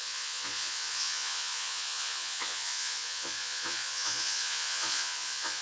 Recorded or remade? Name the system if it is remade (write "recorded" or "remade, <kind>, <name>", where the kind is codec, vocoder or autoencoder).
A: remade, vocoder, Vocos